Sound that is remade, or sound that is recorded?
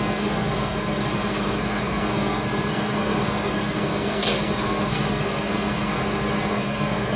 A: remade